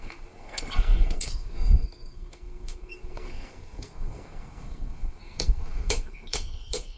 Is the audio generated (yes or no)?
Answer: yes